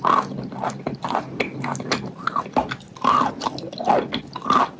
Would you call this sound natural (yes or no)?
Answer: yes